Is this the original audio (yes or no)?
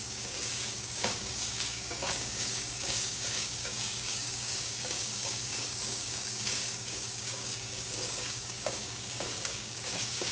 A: no